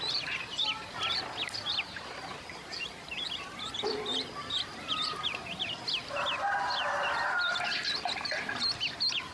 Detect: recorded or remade remade